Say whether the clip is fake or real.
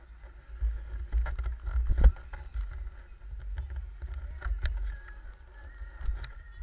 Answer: real